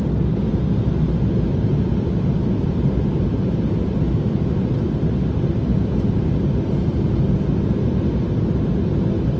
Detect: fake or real real